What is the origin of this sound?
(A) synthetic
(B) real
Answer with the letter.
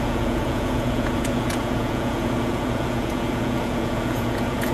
A